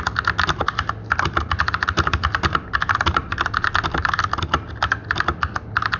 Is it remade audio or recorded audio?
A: recorded